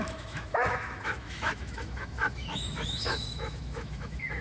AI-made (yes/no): yes